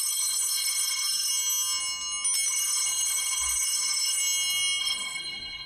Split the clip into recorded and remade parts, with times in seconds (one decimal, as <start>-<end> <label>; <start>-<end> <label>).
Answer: 0.0-1.3 remade; 1.3-2.5 recorded; 2.5-4.2 remade; 4.2-4.8 recorded; 4.8-5.7 remade

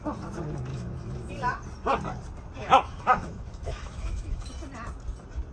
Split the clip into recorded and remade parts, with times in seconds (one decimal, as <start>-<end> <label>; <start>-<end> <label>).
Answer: 0.0-0.7 recorded; 0.7-1.3 remade; 1.3-2.6 recorded; 2.6-4.5 remade; 4.5-5.5 recorded

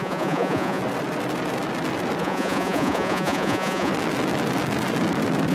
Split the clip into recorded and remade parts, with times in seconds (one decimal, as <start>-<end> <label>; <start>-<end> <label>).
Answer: 0.0-0.8 remade; 0.8-2.2 recorded; 2.2-3.9 remade; 3.9-5.5 recorded

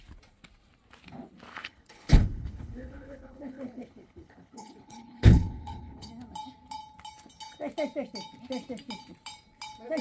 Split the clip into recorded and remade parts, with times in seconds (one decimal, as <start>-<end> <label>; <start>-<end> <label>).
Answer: 0.0-1.5 recorded; 1.5-6.1 remade; 6.1-10.0 recorded